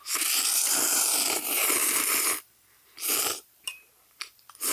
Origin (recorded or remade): remade